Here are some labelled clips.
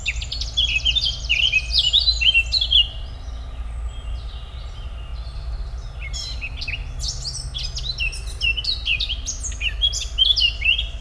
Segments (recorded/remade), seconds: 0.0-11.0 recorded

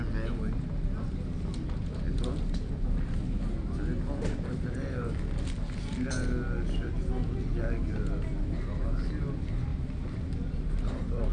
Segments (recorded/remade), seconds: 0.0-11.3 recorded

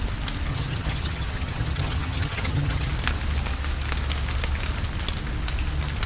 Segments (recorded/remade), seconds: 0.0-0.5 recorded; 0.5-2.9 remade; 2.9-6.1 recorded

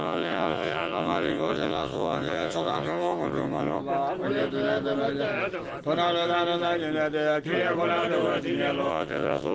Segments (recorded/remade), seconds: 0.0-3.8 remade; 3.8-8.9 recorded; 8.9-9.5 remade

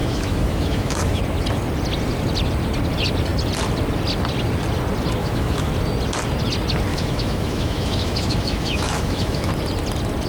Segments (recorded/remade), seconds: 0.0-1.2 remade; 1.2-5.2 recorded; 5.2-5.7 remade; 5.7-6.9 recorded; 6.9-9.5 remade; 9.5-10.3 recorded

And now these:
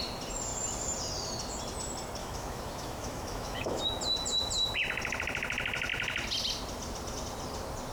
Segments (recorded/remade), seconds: 0.0-2.2 recorded; 2.2-3.8 remade; 3.8-7.9 recorded